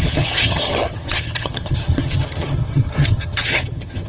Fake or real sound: fake